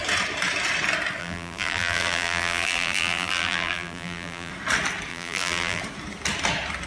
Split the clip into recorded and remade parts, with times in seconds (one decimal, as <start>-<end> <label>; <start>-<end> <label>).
0.0-1.2 recorded; 1.2-4.5 remade; 4.5-5.1 recorded; 5.1-5.8 remade; 5.8-6.9 recorded